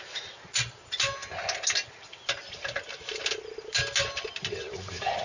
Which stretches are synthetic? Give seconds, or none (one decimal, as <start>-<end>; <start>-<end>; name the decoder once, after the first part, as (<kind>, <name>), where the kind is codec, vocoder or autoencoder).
none